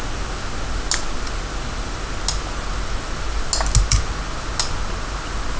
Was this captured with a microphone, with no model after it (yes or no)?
yes